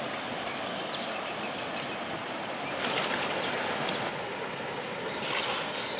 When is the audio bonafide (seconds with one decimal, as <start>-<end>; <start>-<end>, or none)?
0.0-6.0